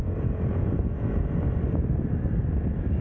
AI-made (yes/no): no